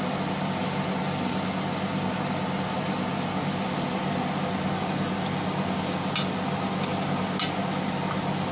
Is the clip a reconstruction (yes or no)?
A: no